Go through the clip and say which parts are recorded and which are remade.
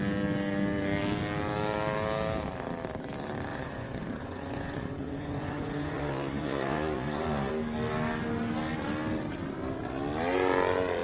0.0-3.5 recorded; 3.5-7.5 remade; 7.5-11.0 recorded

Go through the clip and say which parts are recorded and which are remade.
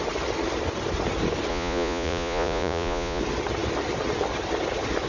0.0-1.5 recorded; 1.5-3.2 remade; 3.2-5.1 recorded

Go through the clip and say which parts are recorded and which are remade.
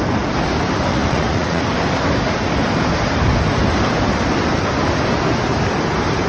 0.0-0.9 recorded; 0.9-1.6 remade; 1.6-6.3 recorded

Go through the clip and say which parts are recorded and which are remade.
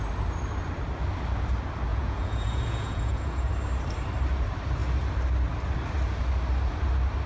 0.0-1.9 recorded; 1.9-3.5 remade; 3.5-7.3 recorded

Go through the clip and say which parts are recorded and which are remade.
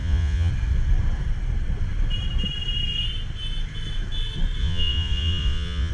0.0-0.5 remade; 0.5-4.6 recorded; 4.6-5.9 remade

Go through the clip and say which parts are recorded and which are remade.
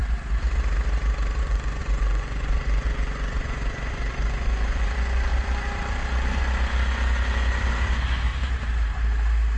0.0-1.4 recorded; 1.4-8.3 remade; 8.3-9.6 recorded